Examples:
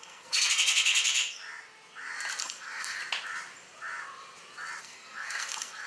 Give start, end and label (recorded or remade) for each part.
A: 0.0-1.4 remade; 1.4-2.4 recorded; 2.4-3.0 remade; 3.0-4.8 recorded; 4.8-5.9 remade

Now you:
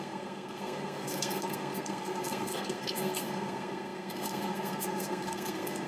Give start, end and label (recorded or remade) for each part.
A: 0.0-5.9 remade

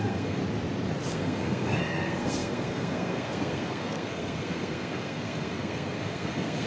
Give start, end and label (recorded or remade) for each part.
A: 0.0-0.4 remade; 0.4-1.1 recorded; 1.1-6.7 remade

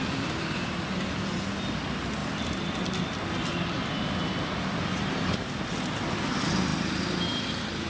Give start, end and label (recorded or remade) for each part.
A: 0.0-7.9 recorded

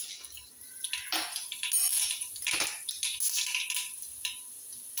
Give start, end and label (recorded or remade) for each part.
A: 0.0-5.0 recorded